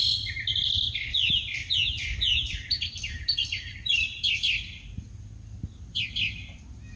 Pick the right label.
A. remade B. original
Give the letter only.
B